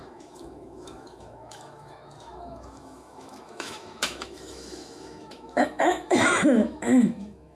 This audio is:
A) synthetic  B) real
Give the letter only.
A